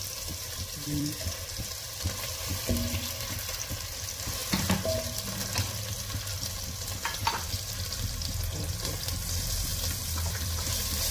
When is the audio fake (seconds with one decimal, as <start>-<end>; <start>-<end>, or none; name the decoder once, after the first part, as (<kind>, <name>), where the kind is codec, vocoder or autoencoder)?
0.0-4.4 (vocoder, BigVGAN v2); 6.6-7.2; 7.9-11.1